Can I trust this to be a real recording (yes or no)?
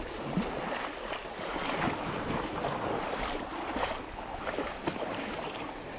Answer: yes